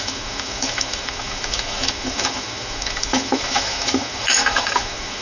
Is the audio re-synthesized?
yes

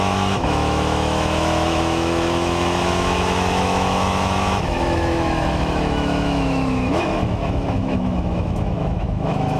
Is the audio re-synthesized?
yes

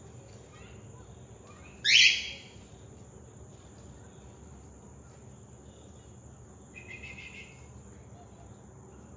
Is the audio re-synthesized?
no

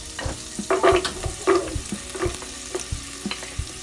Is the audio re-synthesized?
no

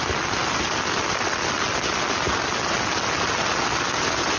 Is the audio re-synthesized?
no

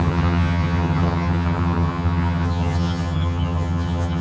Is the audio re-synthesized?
yes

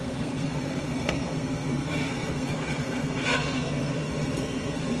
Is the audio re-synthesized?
yes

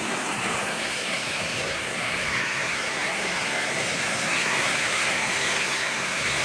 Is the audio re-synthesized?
yes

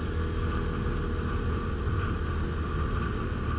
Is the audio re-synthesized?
no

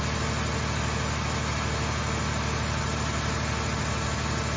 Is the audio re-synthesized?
no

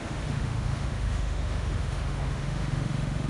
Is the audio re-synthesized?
yes